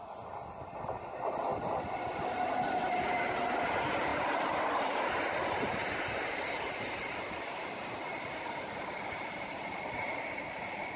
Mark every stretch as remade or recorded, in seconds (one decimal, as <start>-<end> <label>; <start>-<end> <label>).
0.0-11.0 recorded